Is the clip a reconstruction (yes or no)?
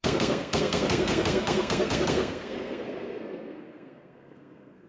yes